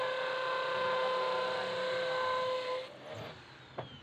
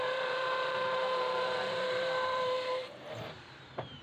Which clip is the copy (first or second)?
second